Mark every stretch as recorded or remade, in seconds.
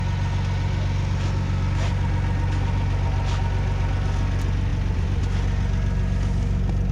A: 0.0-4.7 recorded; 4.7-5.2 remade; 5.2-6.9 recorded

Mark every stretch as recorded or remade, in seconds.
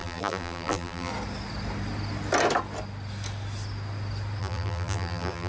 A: 0.0-1.1 remade; 1.1-4.4 recorded; 4.4-5.5 remade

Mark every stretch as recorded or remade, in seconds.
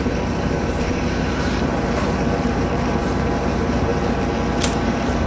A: 0.0-3.9 remade; 3.9-4.7 recorded; 4.7-5.3 remade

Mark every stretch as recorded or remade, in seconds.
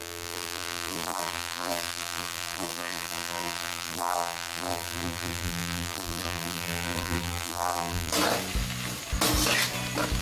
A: 0.0-8.1 remade; 8.1-10.2 recorded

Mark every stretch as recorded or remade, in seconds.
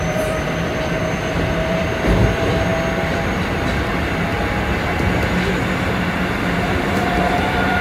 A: 0.0-4.3 remade; 4.3-6.4 recorded; 6.4-7.8 remade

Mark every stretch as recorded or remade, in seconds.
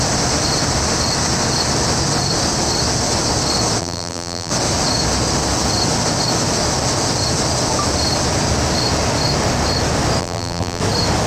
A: 0.0-3.8 recorded; 3.8-4.5 remade; 4.5-10.2 recorded; 10.2-10.8 remade; 10.8-11.3 recorded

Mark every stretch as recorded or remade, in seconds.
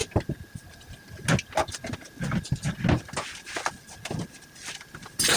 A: 0.0-5.4 recorded